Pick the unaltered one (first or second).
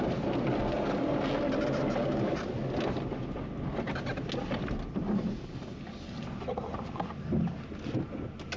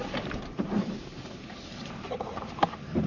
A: first